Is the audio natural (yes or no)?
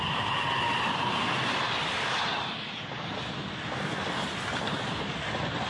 yes